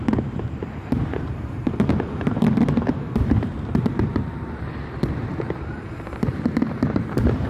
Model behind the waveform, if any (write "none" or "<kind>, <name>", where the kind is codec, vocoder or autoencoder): vocoder, BigVGAN v2